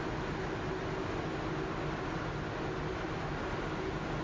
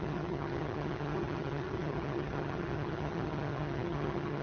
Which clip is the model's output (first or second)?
second